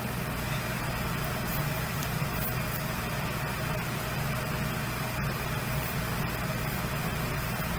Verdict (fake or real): real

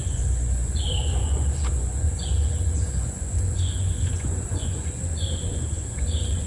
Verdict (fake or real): fake